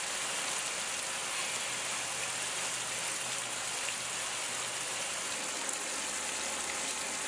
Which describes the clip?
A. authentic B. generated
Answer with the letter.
A